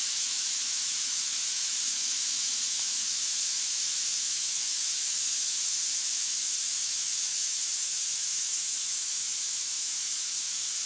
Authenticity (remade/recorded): remade